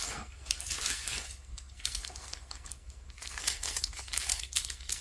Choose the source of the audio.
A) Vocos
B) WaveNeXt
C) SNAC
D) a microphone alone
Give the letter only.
C